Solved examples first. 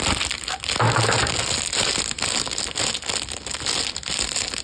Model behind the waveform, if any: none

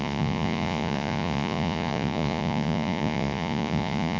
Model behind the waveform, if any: vocoder, Vocos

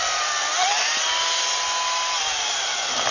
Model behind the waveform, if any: none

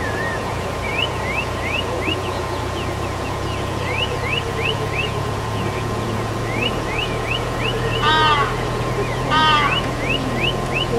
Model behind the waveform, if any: vocoder, Vocos